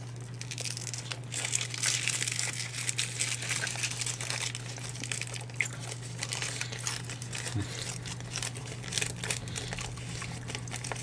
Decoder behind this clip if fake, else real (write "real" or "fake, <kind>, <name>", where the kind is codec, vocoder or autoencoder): real